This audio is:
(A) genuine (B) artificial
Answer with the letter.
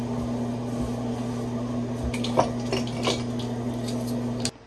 A